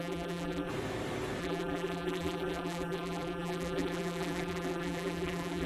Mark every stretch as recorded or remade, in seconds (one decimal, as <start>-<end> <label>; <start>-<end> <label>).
0.0-0.7 remade; 0.7-1.4 recorded; 1.4-5.7 remade